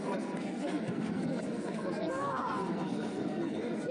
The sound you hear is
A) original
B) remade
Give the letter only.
B